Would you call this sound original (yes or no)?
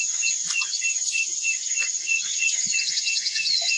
no